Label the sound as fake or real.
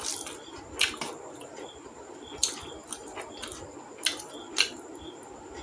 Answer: real